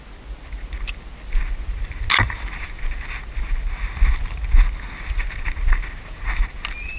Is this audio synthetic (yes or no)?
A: no